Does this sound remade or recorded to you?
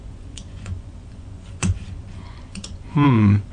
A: remade